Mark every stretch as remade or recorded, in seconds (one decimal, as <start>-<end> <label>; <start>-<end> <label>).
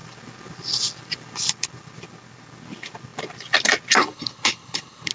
0.0-4.0 recorded; 4.0-5.1 remade